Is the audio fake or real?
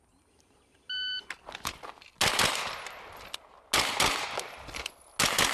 real